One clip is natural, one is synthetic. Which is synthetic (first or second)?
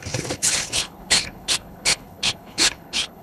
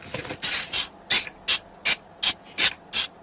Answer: first